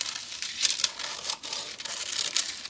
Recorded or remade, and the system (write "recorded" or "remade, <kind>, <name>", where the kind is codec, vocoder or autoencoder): recorded